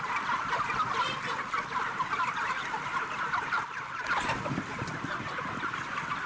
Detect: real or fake real